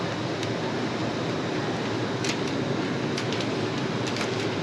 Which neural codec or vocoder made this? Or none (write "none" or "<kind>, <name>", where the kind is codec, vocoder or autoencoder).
none